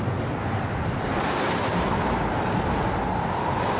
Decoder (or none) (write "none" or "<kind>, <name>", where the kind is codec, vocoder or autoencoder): none